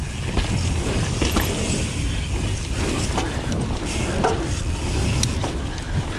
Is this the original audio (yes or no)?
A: yes